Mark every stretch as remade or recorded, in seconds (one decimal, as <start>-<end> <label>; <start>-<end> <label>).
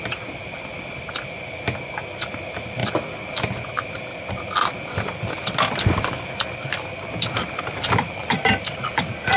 0.0-9.4 recorded